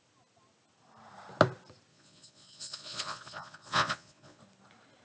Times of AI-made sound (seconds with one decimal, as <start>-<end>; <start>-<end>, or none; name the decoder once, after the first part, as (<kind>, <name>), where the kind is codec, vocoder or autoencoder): 1.9-4.4 (vocoder, Vocos)